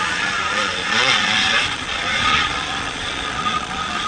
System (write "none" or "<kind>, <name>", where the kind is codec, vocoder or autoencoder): vocoder, Vocos